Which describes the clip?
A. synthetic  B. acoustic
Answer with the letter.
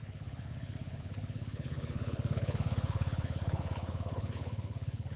A